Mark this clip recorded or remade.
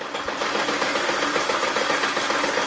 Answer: recorded